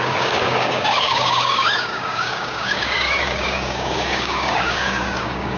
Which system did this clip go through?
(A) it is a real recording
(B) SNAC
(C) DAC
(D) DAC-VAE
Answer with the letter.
C